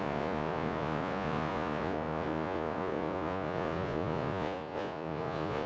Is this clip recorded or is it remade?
remade